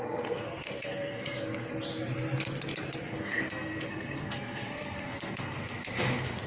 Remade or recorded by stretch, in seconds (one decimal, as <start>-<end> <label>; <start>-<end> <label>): 0.0-1.7 remade; 1.7-3.0 recorded; 3.0-6.5 remade